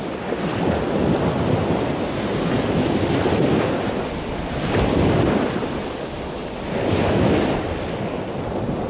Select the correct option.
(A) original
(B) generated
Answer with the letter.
A